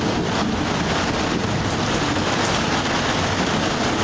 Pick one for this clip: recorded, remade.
recorded